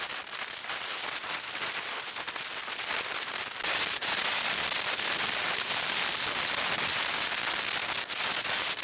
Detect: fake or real real